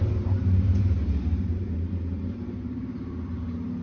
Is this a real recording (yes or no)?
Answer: no